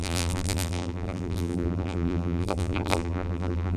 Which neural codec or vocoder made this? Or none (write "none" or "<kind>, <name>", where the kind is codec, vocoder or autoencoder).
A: vocoder, BigVGAN v2